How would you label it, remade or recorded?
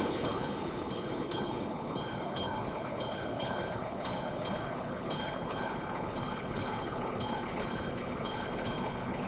remade